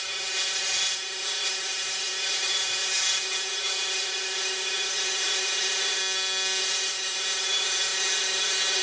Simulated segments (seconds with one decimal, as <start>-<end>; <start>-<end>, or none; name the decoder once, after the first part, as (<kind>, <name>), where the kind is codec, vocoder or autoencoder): 0.0-6.0 (autoencoder, DAC-VAE); 6.6-8.8

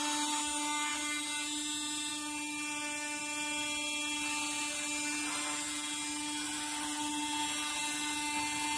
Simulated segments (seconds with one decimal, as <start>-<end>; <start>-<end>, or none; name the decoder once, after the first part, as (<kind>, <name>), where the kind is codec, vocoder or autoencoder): none

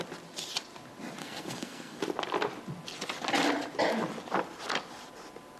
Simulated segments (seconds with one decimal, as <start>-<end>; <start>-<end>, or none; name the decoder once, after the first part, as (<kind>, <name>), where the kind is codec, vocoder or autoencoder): 1.2-2.0 (codec, SNAC)

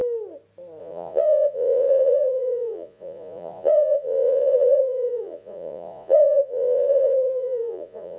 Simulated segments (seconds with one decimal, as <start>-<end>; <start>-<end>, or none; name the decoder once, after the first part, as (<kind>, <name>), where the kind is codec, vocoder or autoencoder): 0.8-8.2 (vocoder, Vocos)

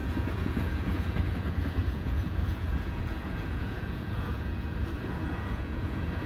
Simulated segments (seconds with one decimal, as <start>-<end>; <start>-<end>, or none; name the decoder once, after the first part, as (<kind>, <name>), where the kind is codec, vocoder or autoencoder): 0.0-6.3 (vocoder, Vocos)

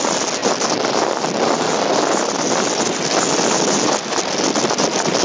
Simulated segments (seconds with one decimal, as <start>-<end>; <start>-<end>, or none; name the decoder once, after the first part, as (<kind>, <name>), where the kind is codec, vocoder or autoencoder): none